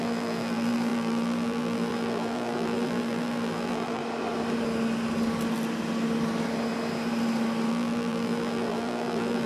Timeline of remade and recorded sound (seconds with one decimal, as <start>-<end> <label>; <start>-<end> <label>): 0.0-4.0 remade; 4.0-7.7 recorded; 7.7-9.5 remade